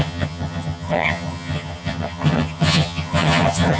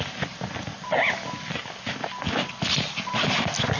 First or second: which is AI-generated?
first